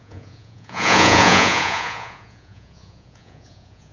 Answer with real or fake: fake